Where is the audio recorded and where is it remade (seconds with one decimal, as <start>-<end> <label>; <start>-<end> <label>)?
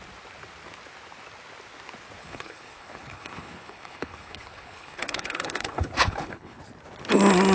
0.0-2.2 recorded; 2.2-6.6 remade; 6.6-7.5 recorded